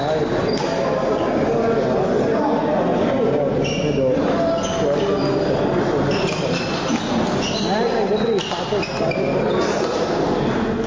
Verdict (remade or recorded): recorded